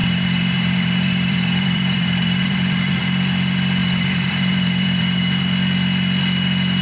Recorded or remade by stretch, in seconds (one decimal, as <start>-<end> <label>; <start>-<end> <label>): 0.0-3.0 remade; 3.0-3.8 recorded; 3.8-5.3 remade; 5.3-6.8 recorded